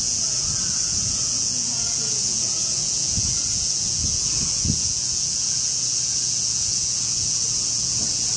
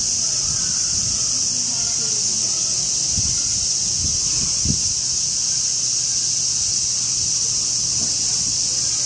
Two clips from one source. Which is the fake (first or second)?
first